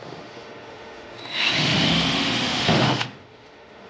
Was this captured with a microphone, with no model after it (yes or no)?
no